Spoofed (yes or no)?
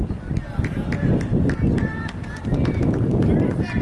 no